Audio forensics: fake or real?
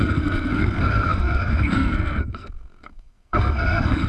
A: fake